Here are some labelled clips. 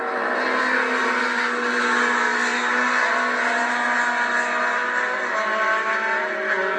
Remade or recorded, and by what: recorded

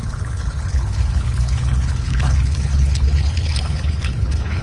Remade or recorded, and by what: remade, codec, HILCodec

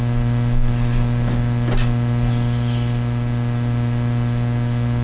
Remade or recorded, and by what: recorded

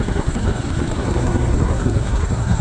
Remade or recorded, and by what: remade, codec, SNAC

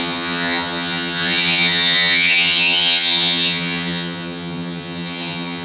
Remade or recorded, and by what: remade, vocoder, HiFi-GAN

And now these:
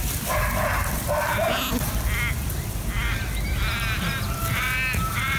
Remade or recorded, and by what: recorded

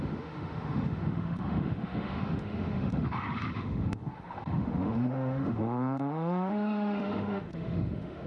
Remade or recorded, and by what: remade, autoencoder, DAC-VAE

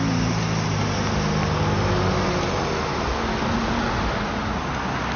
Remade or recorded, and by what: recorded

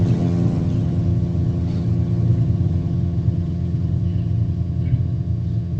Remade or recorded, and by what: remade, vocoder, HiFi-GAN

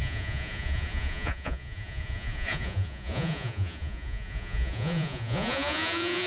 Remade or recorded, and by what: remade, vocoder, Vocos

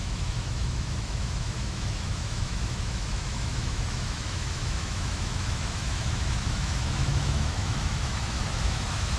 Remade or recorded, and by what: remade, autoencoder, DAC-VAE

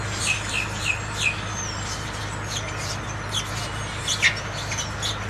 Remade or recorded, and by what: recorded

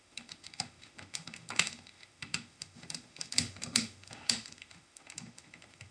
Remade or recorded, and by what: remade, autoencoder, DAC-VAE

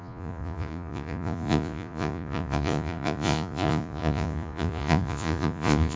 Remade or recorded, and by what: remade, vocoder, Vocos